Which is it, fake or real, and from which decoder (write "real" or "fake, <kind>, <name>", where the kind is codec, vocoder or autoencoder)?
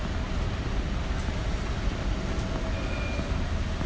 real